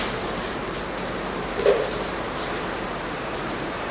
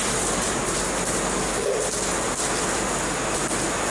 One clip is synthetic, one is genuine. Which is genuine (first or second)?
second